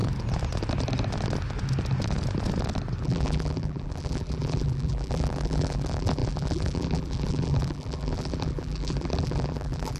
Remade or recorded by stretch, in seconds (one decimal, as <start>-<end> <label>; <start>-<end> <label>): 0.0-3.0 recorded; 3.0-10.0 remade